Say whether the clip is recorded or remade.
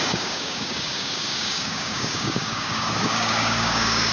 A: remade